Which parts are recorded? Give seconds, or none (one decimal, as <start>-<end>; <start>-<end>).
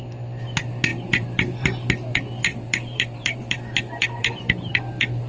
0.0-0.9; 1.9-2.5; 4.2-5.3